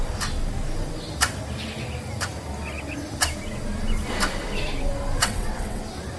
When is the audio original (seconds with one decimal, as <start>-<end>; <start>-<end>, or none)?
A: 0.0-5.2; 5.8-6.2